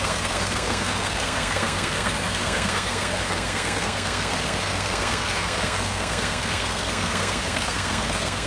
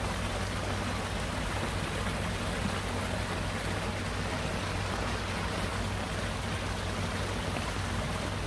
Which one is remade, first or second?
first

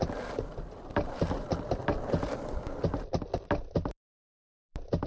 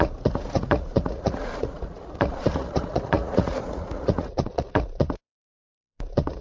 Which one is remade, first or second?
second